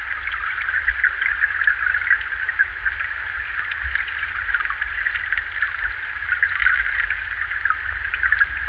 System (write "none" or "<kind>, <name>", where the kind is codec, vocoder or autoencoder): none